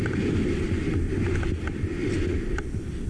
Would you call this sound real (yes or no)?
yes